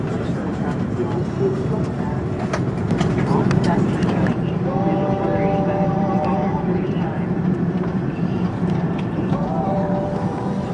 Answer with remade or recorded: remade